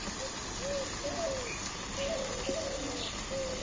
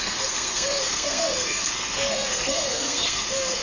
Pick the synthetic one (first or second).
second